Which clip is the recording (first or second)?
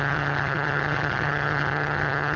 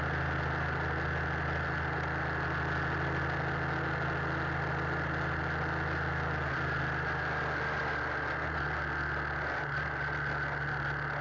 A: second